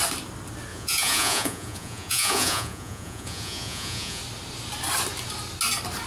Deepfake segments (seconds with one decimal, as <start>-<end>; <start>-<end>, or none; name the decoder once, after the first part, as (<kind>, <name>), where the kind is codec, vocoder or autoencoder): 0.7-4.2 (vocoder, Vocos)